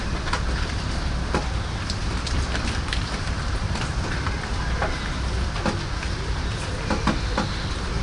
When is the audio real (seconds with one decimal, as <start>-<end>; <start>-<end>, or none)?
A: 4.5-8.0